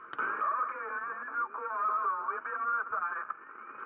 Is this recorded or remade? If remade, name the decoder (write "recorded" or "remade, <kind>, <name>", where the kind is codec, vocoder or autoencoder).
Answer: recorded